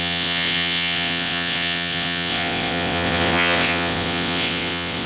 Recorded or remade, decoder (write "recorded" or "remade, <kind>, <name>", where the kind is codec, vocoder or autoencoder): remade, vocoder, WaveNeXt